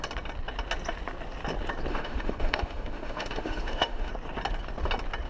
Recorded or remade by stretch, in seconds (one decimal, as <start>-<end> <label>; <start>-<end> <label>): 0.0-1.9 recorded; 1.9-4.1 remade; 4.1-5.3 recorded